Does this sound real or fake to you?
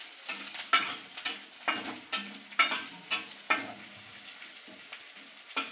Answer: real